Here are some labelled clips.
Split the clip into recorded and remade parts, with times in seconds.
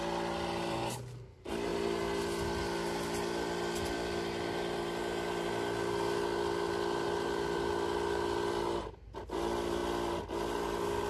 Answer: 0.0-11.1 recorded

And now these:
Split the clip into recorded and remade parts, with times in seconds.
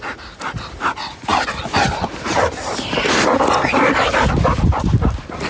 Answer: 0.0-5.5 recorded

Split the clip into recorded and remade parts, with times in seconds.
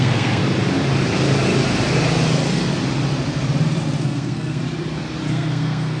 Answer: 0.0-0.4 remade; 0.4-4.0 recorded; 4.0-4.6 remade; 4.6-5.3 recorded; 5.3-6.0 remade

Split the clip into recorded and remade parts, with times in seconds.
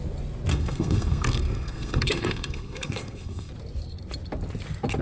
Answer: 0.0-0.5 recorded; 0.5-3.5 remade; 3.5-5.0 recorded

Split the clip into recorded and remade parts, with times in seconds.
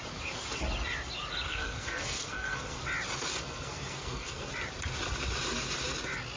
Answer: 0.0-1.5 recorded; 1.5-2.8 remade; 2.8-3.3 recorded; 3.3-4.5 remade; 4.5-6.4 recorded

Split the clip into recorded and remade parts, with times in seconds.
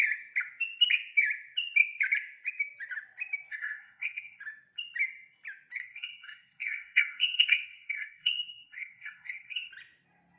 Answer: 0.0-3.5 recorded; 3.5-4.4 remade; 4.4-5.8 recorded; 5.8-9.7 remade; 9.7-10.4 recorded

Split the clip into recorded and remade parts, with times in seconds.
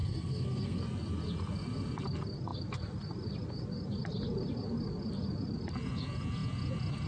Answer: 0.0-0.8 remade; 0.8-7.1 recorded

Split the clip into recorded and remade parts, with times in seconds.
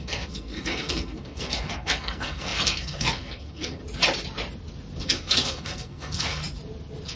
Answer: 0.0-3.8 remade; 3.8-5.0 recorded; 5.0-6.4 remade; 6.4-7.2 recorded